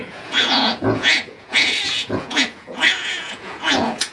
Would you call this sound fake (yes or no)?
yes